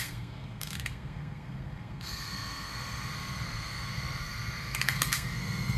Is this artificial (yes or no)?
yes